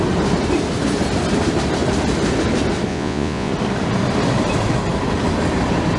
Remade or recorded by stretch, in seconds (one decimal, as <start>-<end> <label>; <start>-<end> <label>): 0.0-2.9 recorded; 2.9-3.5 remade; 3.5-6.0 recorded